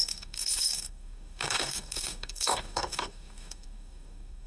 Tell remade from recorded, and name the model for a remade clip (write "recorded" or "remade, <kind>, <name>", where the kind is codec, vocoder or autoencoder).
remade, codec, DAC